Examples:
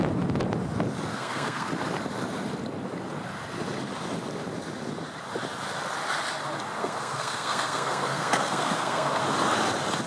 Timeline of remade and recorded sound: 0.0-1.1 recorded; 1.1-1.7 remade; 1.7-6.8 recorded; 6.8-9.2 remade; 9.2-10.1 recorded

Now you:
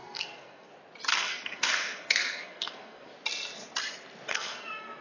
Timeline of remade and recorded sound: 0.0-0.7 remade; 0.7-1.1 recorded; 1.1-3.1 remade; 3.1-4.3 recorded; 4.3-5.0 remade

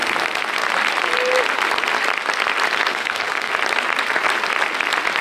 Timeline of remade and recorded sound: 0.0-2.9 recorded; 2.9-3.5 remade; 3.5-5.2 recorded

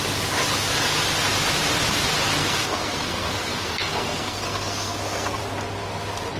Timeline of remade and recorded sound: 0.0-2.4 recorded; 2.4-5.4 remade; 5.4-6.4 recorded

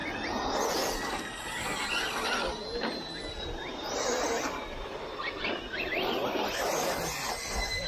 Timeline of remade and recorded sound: 0.0-7.9 recorded

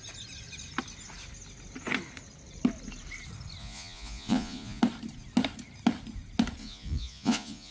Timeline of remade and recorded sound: 0.0-3.6 recorded; 3.6-4.8 remade; 4.8-6.6 recorded; 6.6-7.7 remade